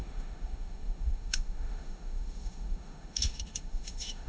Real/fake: fake